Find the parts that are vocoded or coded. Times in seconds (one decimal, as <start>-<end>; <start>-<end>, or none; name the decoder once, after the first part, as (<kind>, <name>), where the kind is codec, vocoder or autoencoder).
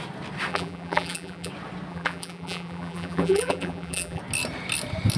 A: 0.5-1.5 (vocoder, BigVGAN v2); 1.9-4.2